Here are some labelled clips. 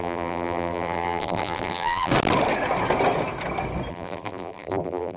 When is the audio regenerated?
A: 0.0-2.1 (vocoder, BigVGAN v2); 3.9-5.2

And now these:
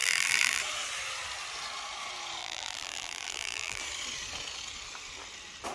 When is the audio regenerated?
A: 0.0-0.6 (vocoder, BigVGAN v2); 2.4-3.8

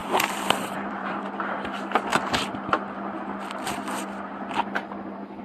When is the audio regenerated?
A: 0.0-1.2 (vocoder, BigVGAN v2)